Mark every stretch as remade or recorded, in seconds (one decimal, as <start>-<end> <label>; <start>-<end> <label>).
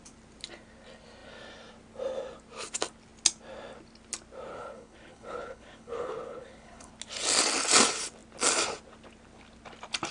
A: 0.0-4.5 recorded; 4.5-6.9 remade; 6.9-10.1 recorded